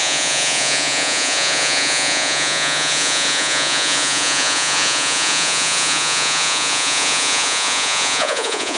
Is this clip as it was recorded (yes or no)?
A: no